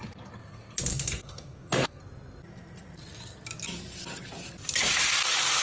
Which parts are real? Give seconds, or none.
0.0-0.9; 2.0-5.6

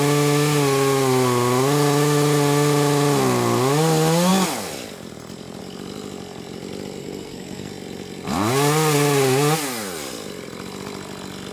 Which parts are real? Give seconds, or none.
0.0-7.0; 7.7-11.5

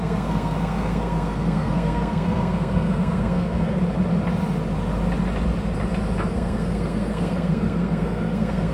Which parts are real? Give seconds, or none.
3.8-6.3